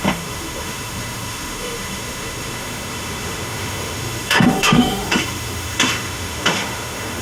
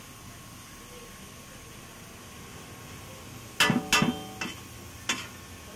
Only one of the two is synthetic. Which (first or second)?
first